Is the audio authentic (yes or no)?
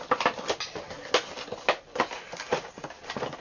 yes